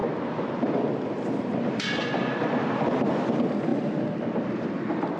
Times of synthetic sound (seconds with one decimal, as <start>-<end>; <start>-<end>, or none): none